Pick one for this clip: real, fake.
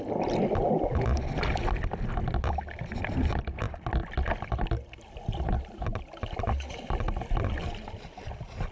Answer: real